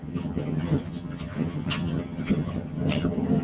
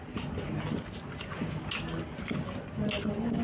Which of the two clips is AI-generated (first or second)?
first